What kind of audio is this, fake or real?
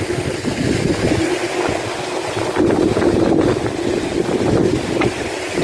real